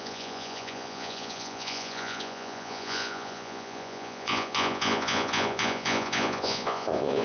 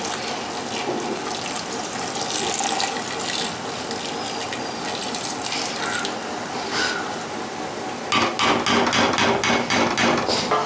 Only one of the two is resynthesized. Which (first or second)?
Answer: first